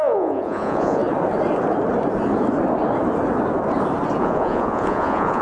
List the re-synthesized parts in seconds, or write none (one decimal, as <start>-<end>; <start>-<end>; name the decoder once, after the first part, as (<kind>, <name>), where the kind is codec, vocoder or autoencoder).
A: 0.0-1.0 (vocoder, Vocos); 4.2-5.4